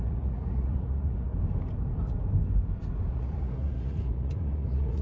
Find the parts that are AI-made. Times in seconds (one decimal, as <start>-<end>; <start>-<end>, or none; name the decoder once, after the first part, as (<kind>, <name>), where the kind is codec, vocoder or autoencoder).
0.0-1.3 (vocoder, Vocos); 3.1-5.0